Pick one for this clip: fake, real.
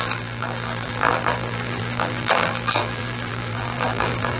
fake